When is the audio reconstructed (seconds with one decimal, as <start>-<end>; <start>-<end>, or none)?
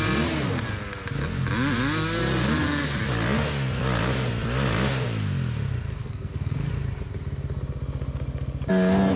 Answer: 6.0-6.7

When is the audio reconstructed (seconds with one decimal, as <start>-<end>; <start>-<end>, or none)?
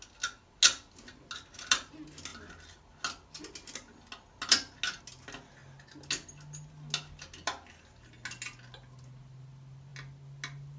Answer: none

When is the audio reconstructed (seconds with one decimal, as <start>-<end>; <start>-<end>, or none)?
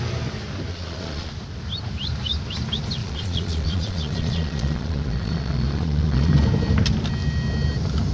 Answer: 0.7-1.3; 3.0-6.3